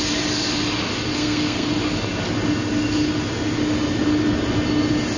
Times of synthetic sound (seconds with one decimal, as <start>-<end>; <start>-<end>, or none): 1.1-1.7